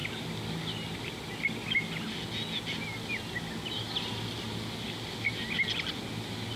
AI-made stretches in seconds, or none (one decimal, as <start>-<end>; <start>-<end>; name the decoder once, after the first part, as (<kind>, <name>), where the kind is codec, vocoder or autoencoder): none